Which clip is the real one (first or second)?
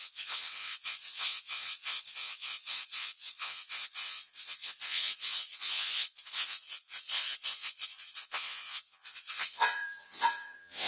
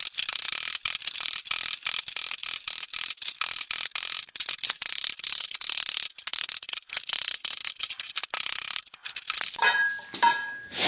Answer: second